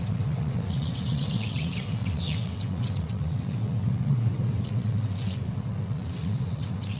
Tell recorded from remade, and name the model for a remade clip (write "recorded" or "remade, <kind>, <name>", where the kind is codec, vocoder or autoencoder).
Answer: remade, vocoder, WaveNeXt